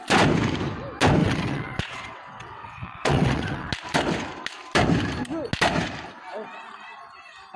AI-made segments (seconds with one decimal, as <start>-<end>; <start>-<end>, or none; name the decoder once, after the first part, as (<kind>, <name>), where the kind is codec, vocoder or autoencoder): 1.2-3.7 (vocoder, WaveNeXt)